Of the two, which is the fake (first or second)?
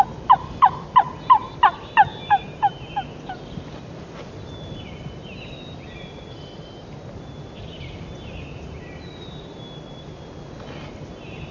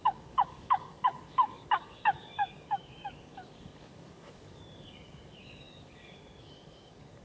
second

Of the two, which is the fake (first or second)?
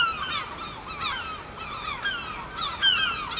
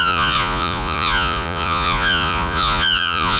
second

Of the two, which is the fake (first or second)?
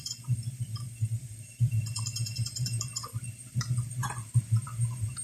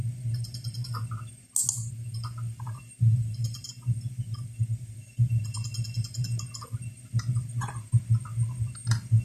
first